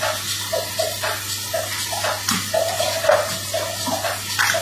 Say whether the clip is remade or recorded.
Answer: recorded